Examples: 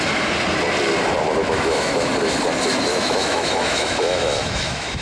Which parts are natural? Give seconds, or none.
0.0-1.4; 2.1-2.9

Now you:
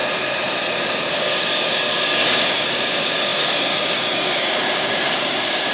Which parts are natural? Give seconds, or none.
0.0-1.1

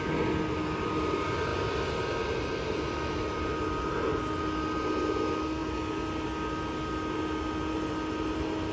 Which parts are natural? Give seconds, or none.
0.0-8.7